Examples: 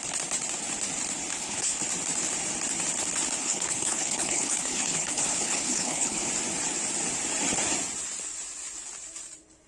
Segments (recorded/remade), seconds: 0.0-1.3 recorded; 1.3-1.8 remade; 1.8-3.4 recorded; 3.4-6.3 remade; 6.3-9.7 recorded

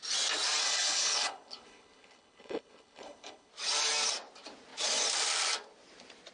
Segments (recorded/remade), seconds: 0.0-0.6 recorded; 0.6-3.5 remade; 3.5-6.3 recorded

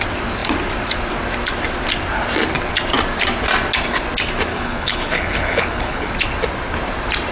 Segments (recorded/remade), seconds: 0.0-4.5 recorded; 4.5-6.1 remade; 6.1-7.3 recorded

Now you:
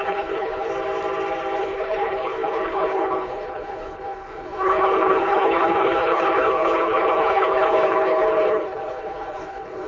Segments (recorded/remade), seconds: 0.0-0.7 remade; 0.7-1.6 recorded; 1.6-9.9 remade

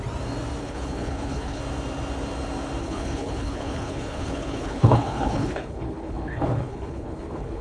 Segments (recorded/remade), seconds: 0.0-0.6 recorded; 0.6-1.6 remade; 1.6-2.8 recorded; 2.8-7.6 remade

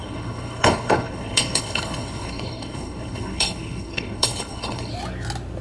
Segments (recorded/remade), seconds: 0.0-4.9 remade; 4.9-5.6 recorded

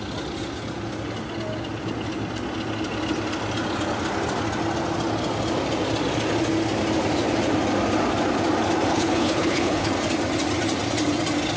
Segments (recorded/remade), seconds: 0.0-8.9 recorded; 8.9-9.9 remade; 9.9-11.6 recorded